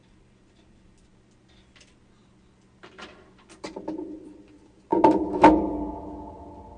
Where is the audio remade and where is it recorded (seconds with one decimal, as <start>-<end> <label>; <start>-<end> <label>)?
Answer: 0.0-1.1 remade; 1.1-4.1 recorded; 4.1-4.9 remade; 4.9-6.8 recorded

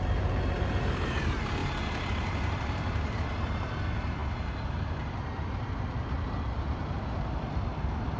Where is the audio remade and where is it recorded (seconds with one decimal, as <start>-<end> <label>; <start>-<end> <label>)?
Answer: 0.0-1.6 remade; 1.6-2.1 recorded; 2.1-8.2 remade

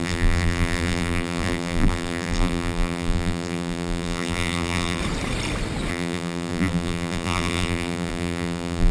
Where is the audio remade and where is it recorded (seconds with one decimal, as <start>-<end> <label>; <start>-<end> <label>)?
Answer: 0.0-5.0 remade; 5.0-5.9 recorded; 5.9-8.9 remade

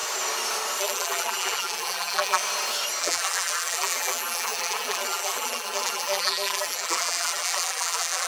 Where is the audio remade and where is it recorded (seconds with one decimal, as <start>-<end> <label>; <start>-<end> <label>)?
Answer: 0.0-0.8 recorded; 0.8-2.4 remade; 2.4-3.0 recorded; 3.0-8.3 remade

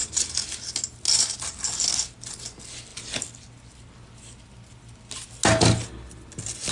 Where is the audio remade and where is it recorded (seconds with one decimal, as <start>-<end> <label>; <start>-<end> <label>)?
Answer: 0.0-6.7 recorded